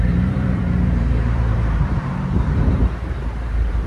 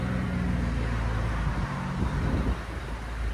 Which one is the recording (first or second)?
second